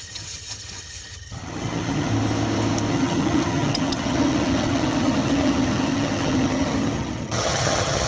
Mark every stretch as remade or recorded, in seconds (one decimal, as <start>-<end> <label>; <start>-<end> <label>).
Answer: 0.0-2.1 remade; 2.1-2.9 recorded; 2.9-8.1 remade